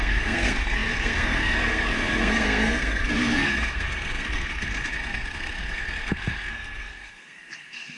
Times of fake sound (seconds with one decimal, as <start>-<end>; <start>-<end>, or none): 0.0-8.0